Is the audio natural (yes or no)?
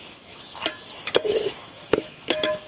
no